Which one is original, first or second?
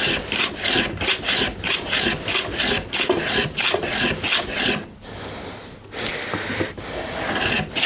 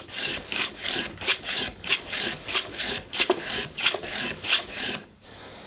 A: first